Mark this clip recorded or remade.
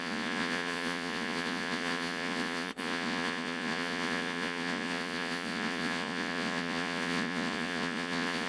remade